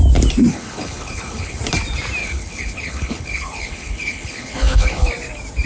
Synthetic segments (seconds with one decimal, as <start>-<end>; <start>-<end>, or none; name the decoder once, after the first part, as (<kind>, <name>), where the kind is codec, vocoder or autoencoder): 0.5-1.6 (codec, HILCodec); 2.2-5.1